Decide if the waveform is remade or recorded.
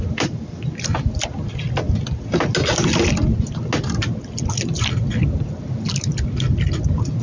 recorded